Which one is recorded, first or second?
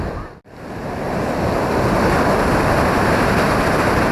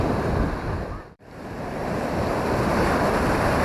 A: first